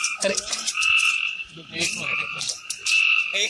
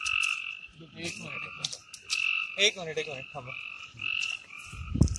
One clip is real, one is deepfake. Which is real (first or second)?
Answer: second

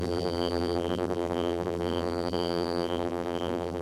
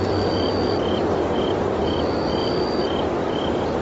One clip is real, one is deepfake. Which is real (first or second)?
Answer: second